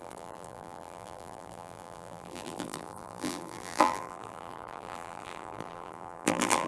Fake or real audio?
fake